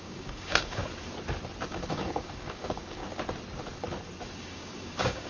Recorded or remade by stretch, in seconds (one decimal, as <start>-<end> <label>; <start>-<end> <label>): 0.0-0.8 remade; 0.8-1.7 recorded; 1.7-3.0 remade; 3.0-4.4 recorded; 4.4-5.3 remade